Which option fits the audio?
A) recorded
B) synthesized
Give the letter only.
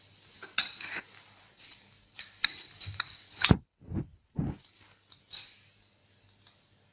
A